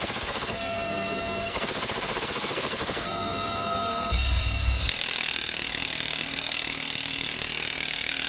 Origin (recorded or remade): remade